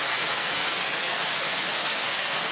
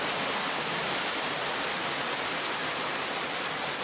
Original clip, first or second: second